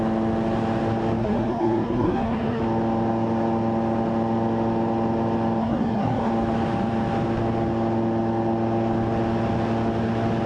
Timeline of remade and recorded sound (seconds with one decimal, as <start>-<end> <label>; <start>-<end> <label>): 0.0-1.2 recorded; 1.2-2.6 remade; 2.6-5.6 recorded; 5.6-6.3 remade; 6.3-10.5 recorded